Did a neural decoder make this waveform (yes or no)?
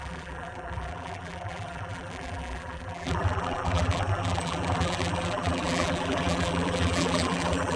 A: yes